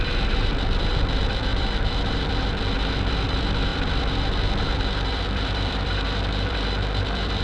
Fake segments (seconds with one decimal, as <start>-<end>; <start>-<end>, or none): 0.0-7.4